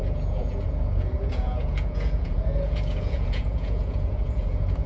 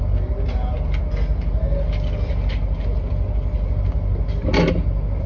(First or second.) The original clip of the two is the second